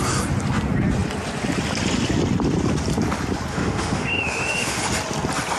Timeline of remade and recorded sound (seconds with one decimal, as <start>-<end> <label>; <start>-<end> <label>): 0.0-3.5 recorded; 3.5-4.8 remade; 4.8-5.6 recorded